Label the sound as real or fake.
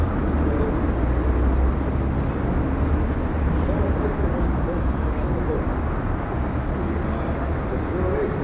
real